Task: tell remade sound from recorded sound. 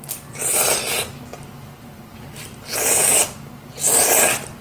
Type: recorded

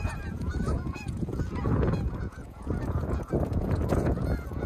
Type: remade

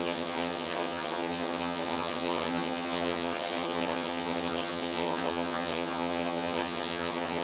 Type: remade